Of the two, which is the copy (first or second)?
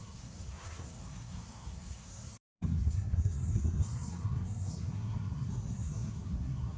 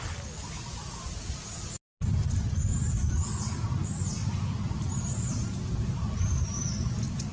first